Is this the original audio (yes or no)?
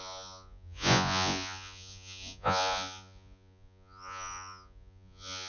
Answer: no